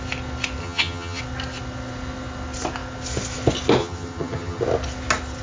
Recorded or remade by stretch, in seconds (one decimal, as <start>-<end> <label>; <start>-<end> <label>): 0.0-0.6 recorded; 0.6-1.2 remade; 1.2-3.8 recorded; 3.8-4.6 remade; 4.6-5.4 recorded